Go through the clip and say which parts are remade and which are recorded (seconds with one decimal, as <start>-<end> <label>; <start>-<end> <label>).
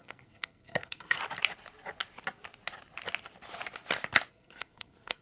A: 0.0-1.2 remade; 1.2-4.3 recorded; 4.3-5.2 remade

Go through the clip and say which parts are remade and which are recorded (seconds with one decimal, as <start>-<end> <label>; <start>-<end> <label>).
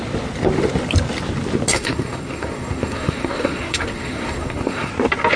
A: 0.0-1.7 recorded; 1.7-4.9 remade; 4.9-5.4 recorded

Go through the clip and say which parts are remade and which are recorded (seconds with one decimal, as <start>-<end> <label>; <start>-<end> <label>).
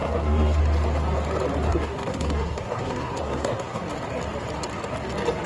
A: 0.0-0.6 remade; 0.6-1.7 recorded; 1.7-3.8 remade; 3.8-5.5 recorded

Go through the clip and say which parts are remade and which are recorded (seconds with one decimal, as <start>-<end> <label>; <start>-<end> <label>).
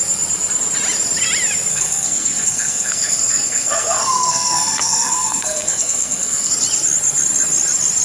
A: 0.0-1.7 recorded; 1.7-6.5 remade; 6.5-8.0 recorded